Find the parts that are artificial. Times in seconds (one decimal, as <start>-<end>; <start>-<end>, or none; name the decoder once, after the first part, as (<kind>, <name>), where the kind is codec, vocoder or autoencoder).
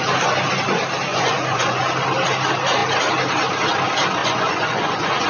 1.1-1.8 (vocoder, Vocos); 4.2-5.3